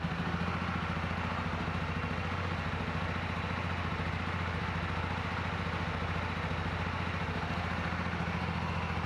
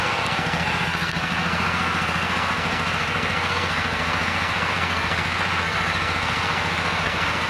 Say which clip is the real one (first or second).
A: first